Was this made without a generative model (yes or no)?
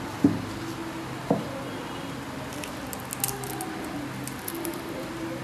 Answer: yes